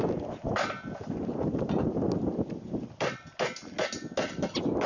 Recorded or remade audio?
recorded